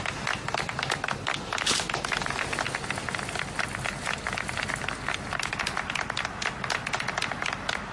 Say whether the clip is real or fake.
real